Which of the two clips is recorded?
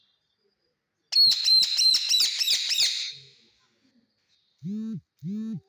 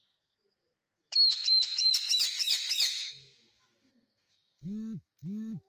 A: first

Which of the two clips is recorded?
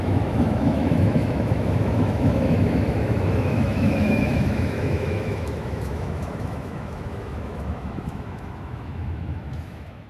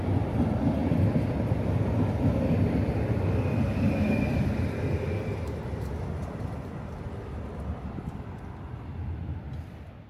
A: second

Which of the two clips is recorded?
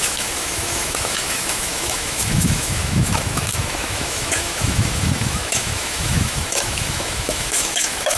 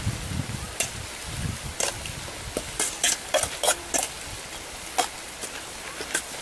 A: second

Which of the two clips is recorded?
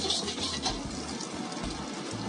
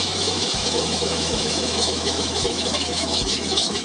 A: first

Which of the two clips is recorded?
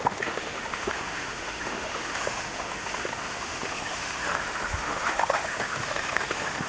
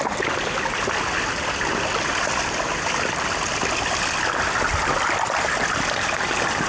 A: second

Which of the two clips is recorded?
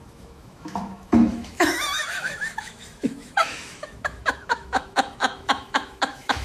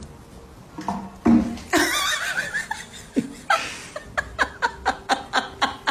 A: second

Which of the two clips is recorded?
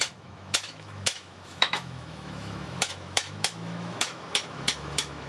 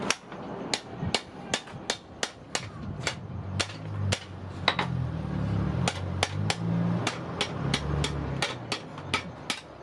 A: second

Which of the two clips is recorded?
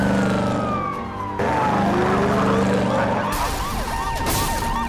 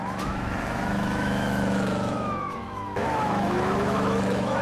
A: first